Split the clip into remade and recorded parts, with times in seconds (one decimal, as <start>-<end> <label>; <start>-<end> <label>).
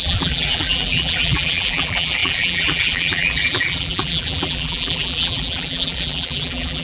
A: 0.0-6.8 remade